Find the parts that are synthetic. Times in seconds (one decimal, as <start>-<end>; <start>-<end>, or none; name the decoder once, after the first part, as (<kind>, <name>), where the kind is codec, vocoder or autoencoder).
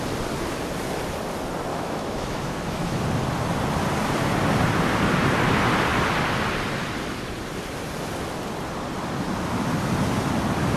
1.7-3.0 (autoencoder, DAC-VAE)